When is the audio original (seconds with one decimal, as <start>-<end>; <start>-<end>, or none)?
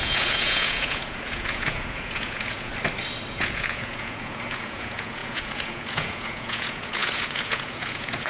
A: 2.7-3.3